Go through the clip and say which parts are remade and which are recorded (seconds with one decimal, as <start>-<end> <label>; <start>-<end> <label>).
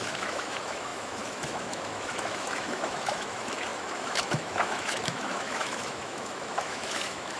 0.0-7.4 remade